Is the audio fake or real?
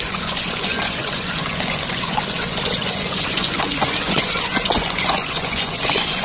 fake